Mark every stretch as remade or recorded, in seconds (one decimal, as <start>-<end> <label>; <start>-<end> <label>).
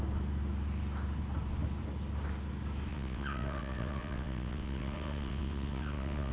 0.0-2.9 recorded; 2.9-6.3 remade